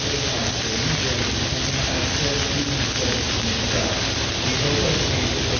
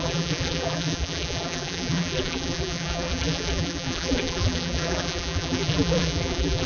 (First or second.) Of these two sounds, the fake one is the second